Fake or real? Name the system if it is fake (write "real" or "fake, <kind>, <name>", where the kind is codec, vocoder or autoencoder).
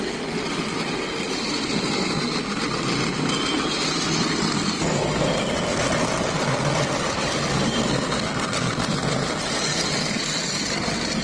real